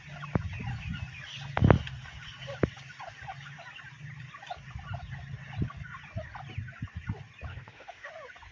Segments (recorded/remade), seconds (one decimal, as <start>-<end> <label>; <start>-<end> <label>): 0.0-7.5 recorded; 7.5-8.1 remade; 8.1-8.5 recorded